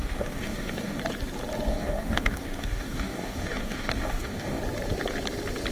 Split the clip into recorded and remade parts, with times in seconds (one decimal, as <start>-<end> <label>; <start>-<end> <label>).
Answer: 0.0-1.0 remade; 1.0-1.7 recorded; 1.7-4.6 remade; 4.6-5.7 recorded

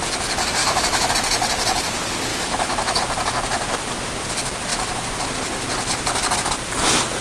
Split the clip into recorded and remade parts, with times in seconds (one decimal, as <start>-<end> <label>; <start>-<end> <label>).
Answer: 0.0-0.6 recorded; 0.6-1.1 remade; 1.1-2.3 recorded; 2.3-3.0 remade; 3.0-7.2 recorded

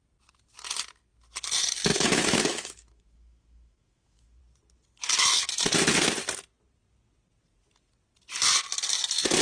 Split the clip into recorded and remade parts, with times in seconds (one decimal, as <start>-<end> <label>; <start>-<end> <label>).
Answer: 0.0-1.9 recorded; 1.9-4.4 remade; 4.4-9.4 recorded

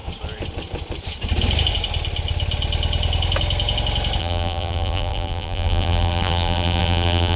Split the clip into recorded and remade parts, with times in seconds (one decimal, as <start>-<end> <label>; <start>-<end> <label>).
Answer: 0.0-4.2 recorded; 4.2-7.4 remade

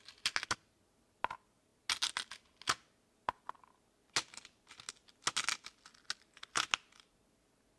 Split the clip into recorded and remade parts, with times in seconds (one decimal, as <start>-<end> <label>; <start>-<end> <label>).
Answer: 0.0-7.8 recorded

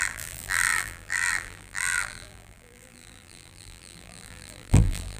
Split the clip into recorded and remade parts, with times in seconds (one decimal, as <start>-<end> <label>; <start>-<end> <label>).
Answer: 0.0-5.2 remade

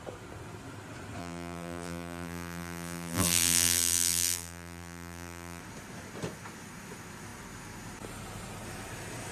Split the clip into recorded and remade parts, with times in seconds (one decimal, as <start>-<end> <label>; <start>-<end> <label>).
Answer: 0.0-1.2 recorded; 1.2-5.6 remade; 5.6-9.3 recorded

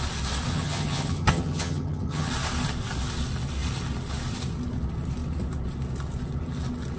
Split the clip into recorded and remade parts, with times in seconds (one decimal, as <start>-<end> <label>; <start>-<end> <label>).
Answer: 0.0-0.5 recorded; 0.5-2.3 remade; 2.3-7.0 recorded